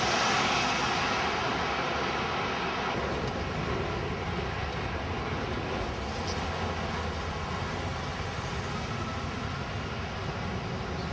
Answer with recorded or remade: recorded